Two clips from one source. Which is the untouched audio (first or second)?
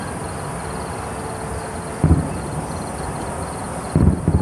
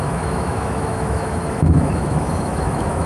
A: first